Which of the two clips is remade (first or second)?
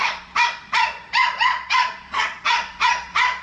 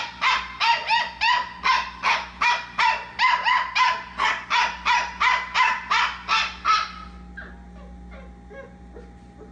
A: first